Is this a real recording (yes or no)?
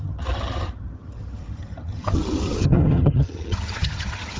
no